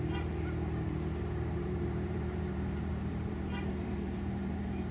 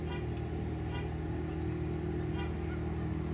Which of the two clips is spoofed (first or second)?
first